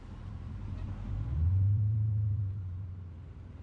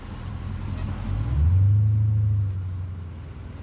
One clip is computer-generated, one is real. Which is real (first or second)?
second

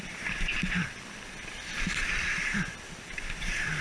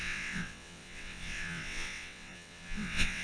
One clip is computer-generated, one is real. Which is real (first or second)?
first